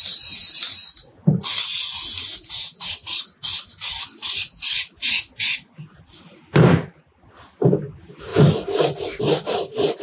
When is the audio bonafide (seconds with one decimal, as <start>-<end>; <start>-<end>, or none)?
0.0-3.0; 4.5-4.9; 7.8-10.0